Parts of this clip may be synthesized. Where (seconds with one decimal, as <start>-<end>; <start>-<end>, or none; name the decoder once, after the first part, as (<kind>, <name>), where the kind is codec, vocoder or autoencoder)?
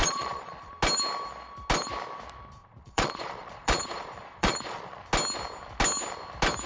0.0-0.7 (vocoder, Vocos); 2.6-5.0